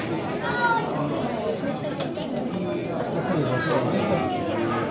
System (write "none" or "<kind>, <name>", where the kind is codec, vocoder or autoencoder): none